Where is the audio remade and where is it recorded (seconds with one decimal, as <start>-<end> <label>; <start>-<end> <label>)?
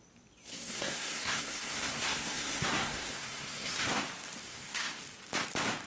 0.0-0.5 recorded; 0.5-4.0 remade; 4.0-4.4 recorded; 4.4-5.0 remade; 5.0-5.9 recorded